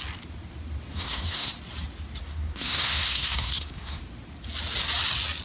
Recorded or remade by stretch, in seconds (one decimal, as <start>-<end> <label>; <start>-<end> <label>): 0.0-0.9 recorded; 0.9-1.5 remade; 1.5-2.3 recorded; 2.3-4.0 remade; 4.0-5.4 recorded